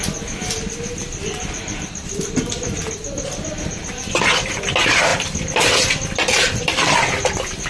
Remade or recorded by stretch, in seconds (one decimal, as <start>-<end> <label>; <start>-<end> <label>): 0.0-1.0 recorded; 1.0-3.7 remade; 3.7-5.1 recorded; 5.1-6.7 remade; 6.7-7.7 recorded